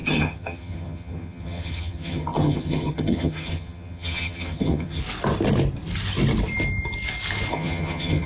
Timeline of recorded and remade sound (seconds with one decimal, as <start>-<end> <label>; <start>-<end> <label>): 0.0-5.0 remade; 5.0-7.5 recorded; 7.5-8.3 remade